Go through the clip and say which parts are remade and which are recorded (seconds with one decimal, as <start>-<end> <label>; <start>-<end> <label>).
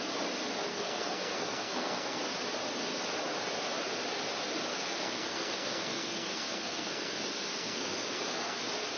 0.0-0.7 recorded; 0.7-2.2 remade; 2.2-4.7 recorded; 4.7-8.6 remade; 8.6-9.0 recorded